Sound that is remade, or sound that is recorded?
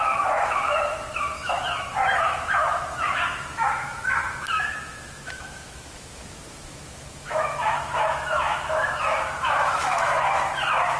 remade